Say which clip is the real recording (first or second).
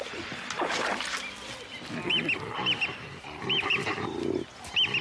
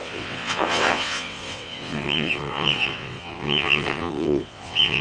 first